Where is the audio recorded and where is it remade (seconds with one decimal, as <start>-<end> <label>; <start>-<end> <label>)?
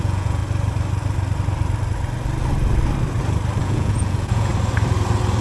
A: 0.0-0.4 remade; 0.4-3.6 recorded; 3.6-4.5 remade; 4.5-5.4 recorded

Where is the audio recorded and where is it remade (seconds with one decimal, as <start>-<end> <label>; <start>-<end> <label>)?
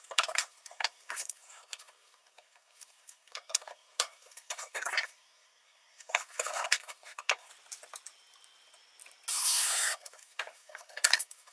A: 0.0-7.5 remade; 7.5-9.3 recorded; 9.3-11.5 remade